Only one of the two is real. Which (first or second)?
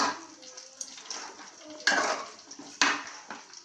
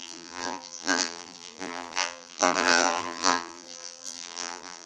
first